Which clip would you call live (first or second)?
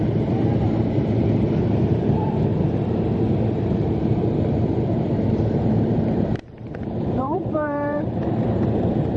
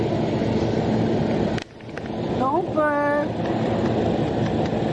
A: second